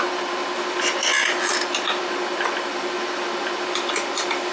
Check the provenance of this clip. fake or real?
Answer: real